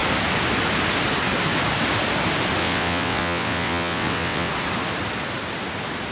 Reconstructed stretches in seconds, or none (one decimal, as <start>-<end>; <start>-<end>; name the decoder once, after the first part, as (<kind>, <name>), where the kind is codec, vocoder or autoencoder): 2.6-4.5 (vocoder, WaveNeXt)